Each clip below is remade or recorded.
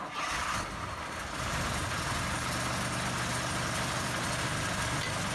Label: recorded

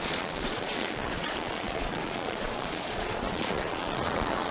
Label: remade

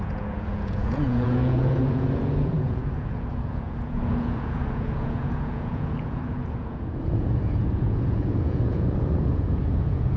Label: remade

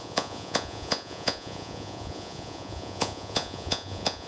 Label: remade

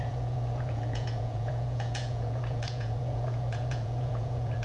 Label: remade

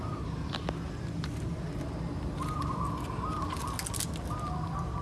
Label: recorded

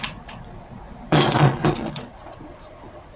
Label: remade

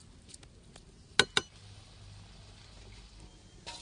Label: recorded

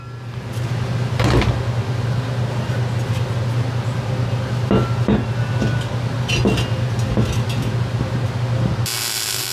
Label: recorded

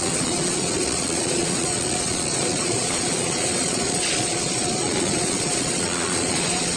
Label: remade